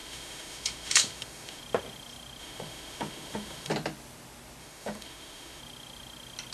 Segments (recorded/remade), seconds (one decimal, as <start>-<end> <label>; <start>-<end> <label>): 0.0-1.6 remade; 1.6-2.4 recorded; 2.4-3.7 remade; 3.7-4.6 recorded; 4.6-5.6 remade; 5.6-6.5 recorded

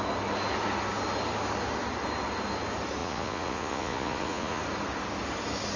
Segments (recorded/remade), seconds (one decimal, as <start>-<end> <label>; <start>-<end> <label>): 0.0-3.0 recorded; 3.0-4.6 remade; 4.6-5.8 recorded